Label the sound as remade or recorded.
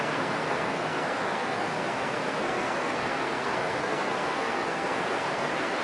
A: remade